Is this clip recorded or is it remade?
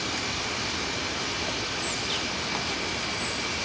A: recorded